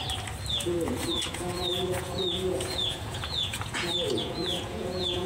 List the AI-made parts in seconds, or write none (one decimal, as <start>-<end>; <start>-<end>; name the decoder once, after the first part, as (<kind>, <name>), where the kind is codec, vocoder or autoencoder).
0.5-5.3 (vocoder, Vocos)